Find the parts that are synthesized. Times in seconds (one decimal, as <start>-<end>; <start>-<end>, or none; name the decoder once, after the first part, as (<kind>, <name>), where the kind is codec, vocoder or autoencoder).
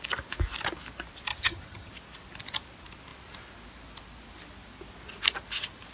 1.3-1.9 (vocoder, HiFi-GAN)